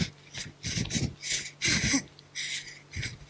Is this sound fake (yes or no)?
no